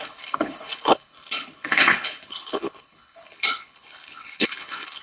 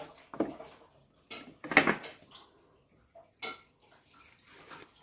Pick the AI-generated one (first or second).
first